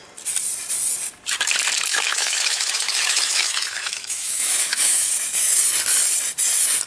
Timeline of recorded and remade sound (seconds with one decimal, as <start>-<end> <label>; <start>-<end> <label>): 0.0-1.9 recorded; 1.9-5.6 remade; 5.6-6.9 recorded